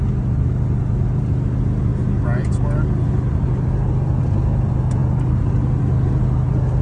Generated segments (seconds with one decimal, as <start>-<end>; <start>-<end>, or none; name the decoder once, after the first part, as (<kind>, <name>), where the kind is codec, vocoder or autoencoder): none